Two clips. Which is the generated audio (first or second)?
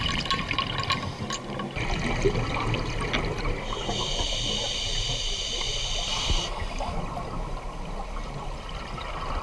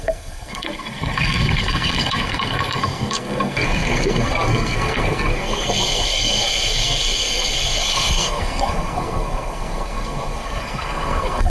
second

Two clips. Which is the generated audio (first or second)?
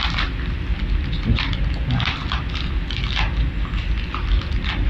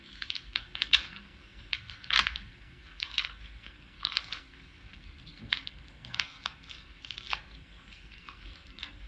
second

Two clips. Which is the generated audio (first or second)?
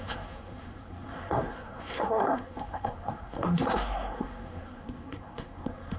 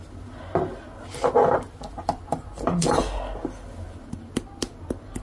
first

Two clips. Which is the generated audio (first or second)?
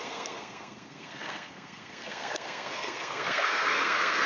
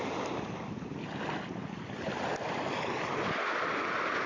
first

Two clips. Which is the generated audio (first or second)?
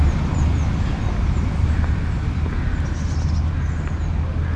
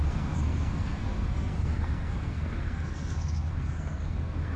second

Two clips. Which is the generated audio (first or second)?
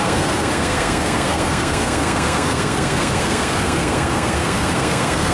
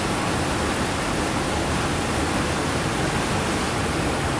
first